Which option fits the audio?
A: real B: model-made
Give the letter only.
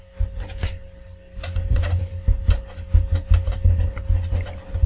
A